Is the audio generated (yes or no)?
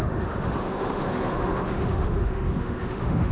yes